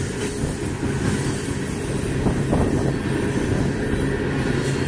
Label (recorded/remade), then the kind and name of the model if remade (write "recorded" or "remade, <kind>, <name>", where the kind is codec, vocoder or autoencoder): recorded